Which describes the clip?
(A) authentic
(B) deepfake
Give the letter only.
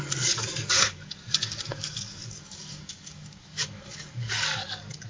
B